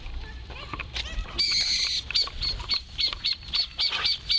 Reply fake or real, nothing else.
real